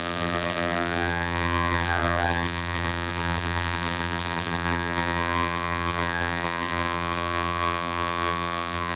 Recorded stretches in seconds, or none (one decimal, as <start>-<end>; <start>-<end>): none